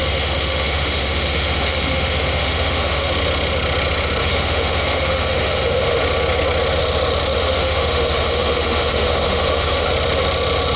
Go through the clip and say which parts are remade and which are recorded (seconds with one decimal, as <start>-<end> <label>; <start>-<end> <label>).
0.0-3.1 remade; 3.1-4.2 recorded; 4.2-6.0 remade; 6.0-7.3 recorded; 7.3-9.9 remade; 9.9-10.8 recorded